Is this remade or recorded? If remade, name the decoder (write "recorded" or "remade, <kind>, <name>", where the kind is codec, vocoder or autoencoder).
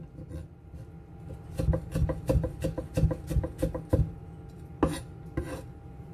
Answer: recorded